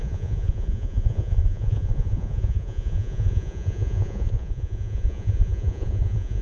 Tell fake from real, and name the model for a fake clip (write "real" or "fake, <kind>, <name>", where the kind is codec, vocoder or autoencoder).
fake, vocoder, Vocos